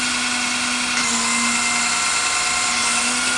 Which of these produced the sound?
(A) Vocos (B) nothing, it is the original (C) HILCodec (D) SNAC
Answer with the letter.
B